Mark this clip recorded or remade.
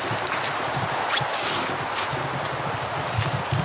recorded